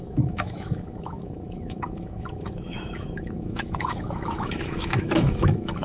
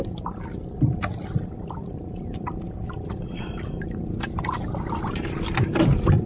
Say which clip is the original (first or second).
second